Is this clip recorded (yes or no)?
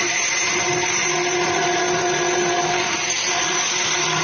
yes